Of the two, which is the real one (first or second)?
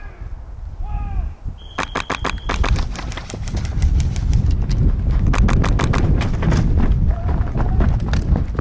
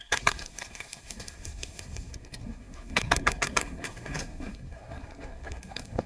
first